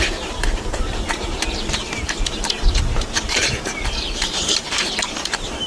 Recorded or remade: remade